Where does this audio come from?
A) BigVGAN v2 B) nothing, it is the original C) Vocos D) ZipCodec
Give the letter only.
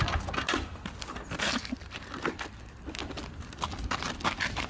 B